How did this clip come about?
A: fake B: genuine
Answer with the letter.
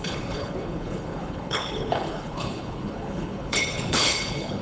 A